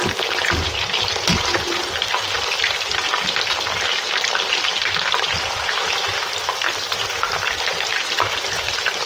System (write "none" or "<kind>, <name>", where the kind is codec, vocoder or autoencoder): vocoder, BigVGAN v2